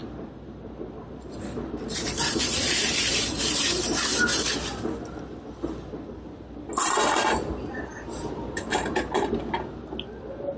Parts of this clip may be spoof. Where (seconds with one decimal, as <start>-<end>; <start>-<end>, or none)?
0.0-4.3; 7.5-10.6